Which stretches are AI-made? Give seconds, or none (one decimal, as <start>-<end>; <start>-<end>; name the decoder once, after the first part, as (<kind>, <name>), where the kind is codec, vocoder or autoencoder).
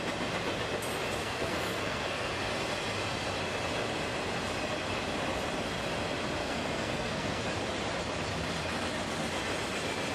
1.2-2.3 (codec, SNAC); 6.4-7.4